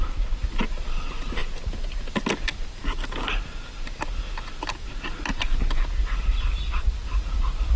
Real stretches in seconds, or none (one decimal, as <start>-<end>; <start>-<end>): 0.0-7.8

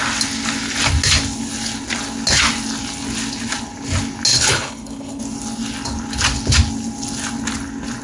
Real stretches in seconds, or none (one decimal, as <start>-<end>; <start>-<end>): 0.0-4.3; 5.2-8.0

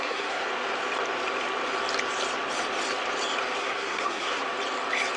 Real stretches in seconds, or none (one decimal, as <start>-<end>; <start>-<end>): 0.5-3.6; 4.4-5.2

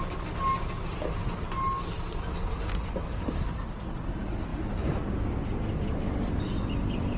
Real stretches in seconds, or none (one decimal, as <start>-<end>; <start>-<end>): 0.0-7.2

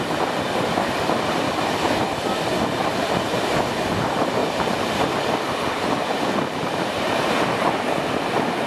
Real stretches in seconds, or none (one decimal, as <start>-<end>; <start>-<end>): 0.0-2.8; 3.5-4.4; 7.7-8.7